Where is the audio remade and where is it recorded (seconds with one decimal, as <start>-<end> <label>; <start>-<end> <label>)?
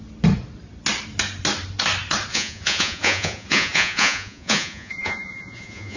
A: 0.0-2.3 recorded; 2.3-6.0 remade